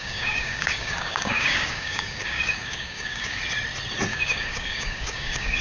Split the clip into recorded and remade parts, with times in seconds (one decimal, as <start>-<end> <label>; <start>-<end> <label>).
0.0-3.4 remade; 3.4-4.1 recorded; 4.1-5.6 remade

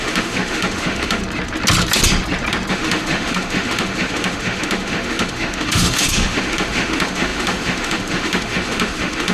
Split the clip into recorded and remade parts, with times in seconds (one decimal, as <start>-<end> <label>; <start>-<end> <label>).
0.0-1.2 remade; 1.2-2.7 recorded; 2.7-9.3 remade

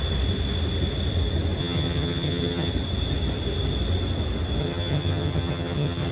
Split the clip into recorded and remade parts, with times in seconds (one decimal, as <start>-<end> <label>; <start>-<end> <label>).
0.0-1.6 recorded; 1.6-2.7 remade; 2.7-4.6 recorded; 4.6-6.1 remade

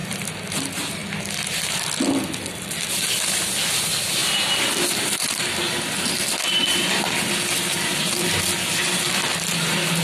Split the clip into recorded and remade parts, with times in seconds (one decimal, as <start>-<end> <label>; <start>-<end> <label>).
0.0-10.0 recorded

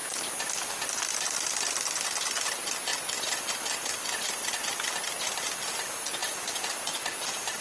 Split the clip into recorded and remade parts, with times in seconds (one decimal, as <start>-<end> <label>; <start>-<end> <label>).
0.0-6.2 recorded; 6.2-7.6 remade